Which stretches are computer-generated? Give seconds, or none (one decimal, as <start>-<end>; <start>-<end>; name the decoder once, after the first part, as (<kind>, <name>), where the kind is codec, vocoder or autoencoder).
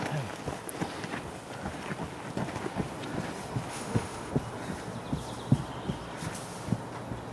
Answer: 3.7-4.3 (autoencoder, DAC-VAE)